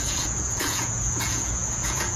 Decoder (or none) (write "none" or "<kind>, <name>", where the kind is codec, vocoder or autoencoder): vocoder, Vocos